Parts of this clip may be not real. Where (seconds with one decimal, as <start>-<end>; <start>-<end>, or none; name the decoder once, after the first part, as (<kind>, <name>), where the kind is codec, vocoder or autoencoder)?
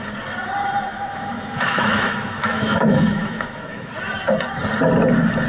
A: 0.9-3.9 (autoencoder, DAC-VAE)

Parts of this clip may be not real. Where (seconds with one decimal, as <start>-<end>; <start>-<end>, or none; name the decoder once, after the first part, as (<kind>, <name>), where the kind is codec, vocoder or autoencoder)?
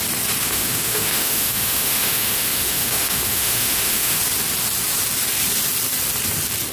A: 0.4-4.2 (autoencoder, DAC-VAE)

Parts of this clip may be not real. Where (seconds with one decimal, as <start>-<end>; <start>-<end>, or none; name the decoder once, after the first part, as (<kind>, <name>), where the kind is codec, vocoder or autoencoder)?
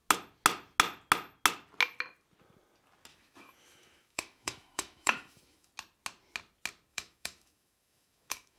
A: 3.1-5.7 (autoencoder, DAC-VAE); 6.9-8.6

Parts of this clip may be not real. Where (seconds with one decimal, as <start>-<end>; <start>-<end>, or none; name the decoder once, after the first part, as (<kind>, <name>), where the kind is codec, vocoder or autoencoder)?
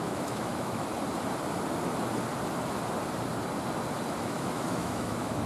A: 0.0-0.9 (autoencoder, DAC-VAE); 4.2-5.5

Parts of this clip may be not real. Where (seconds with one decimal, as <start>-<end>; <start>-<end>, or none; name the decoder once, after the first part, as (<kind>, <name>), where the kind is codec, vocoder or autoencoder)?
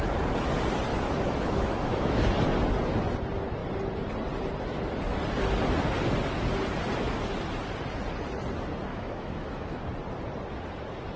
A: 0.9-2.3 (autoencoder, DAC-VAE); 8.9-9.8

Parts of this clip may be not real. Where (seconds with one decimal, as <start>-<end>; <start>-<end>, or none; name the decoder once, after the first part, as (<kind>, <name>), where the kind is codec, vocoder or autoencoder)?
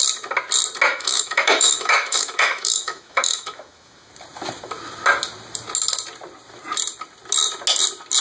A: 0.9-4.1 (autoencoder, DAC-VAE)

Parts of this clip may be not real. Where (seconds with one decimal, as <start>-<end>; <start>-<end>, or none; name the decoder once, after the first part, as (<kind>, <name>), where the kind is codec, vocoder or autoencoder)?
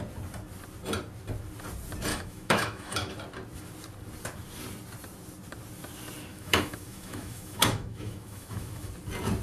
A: 2.1-3.1 (autoencoder, DAC-VAE); 6.3-8.9